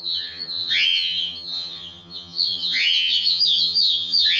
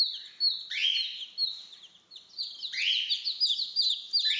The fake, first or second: first